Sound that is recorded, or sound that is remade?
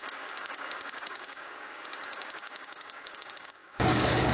remade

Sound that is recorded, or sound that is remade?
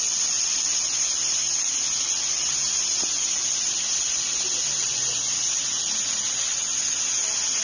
recorded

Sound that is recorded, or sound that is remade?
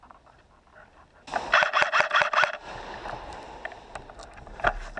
recorded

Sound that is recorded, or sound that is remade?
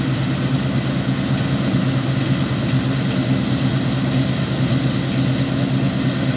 recorded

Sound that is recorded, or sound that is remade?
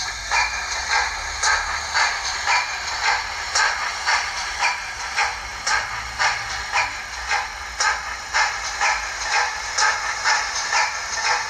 recorded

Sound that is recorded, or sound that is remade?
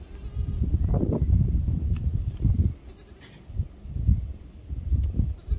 recorded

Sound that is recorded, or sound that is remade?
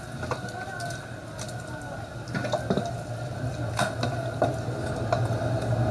recorded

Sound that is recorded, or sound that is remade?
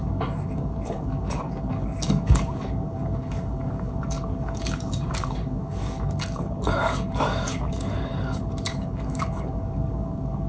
remade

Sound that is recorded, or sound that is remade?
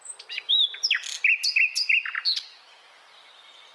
recorded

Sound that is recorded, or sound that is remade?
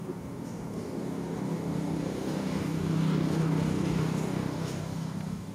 remade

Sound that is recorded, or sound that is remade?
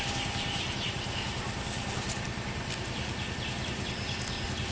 recorded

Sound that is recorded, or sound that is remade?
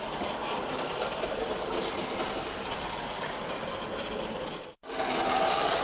recorded